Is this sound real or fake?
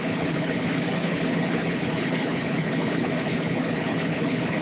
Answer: fake